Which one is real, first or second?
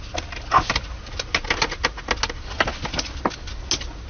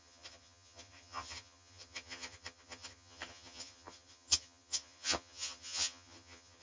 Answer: first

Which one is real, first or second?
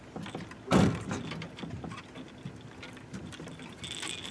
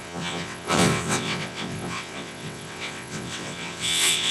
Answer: first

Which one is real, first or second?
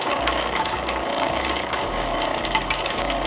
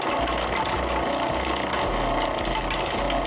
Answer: second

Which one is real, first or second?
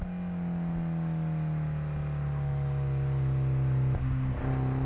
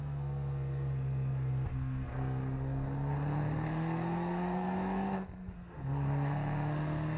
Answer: first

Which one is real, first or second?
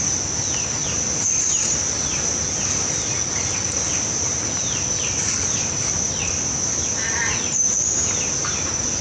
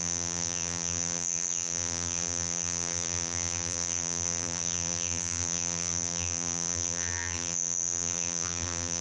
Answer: first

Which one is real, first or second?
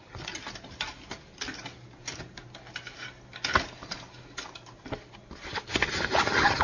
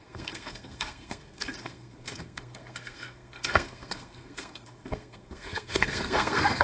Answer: first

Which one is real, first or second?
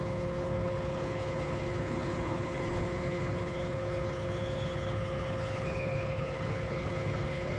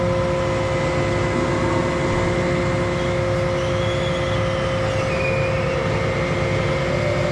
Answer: second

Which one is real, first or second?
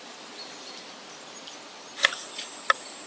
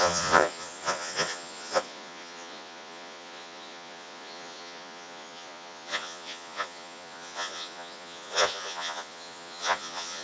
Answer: first